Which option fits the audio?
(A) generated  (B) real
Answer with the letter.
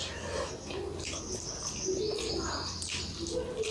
B